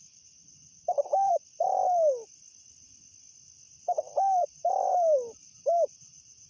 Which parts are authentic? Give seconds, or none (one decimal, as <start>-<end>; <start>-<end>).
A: 1.3-4.4